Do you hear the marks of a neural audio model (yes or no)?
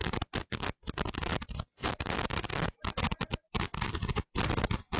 yes